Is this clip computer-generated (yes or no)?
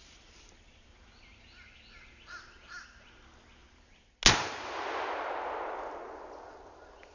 no